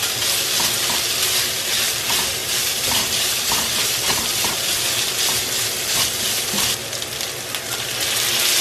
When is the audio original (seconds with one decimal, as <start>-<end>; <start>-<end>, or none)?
0.0-2.4; 4.6-8.6